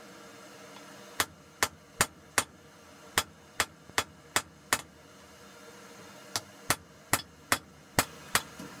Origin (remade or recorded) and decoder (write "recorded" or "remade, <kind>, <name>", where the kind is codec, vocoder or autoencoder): recorded